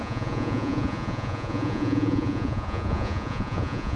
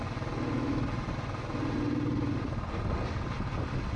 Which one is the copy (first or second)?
first